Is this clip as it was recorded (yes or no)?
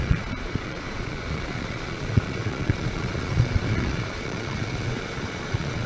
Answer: no